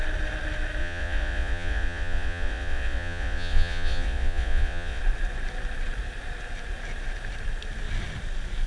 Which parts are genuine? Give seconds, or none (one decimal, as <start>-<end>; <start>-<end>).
0.0-0.8; 5.0-8.7